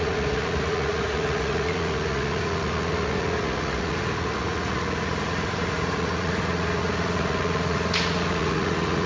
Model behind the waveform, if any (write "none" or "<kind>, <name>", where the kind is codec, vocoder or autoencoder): vocoder, Vocos